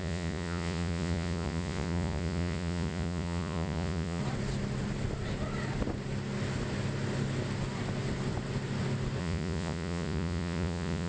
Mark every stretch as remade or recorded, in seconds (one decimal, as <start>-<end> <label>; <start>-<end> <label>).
0.0-4.2 remade; 4.2-9.2 recorded; 9.2-11.1 remade